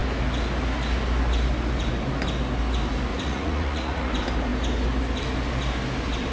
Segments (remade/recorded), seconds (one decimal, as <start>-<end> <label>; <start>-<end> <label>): 0.0-3.1 recorded; 3.1-4.1 remade; 4.1-6.3 recorded